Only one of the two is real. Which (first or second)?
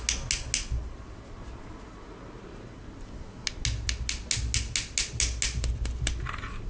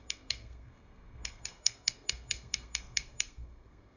first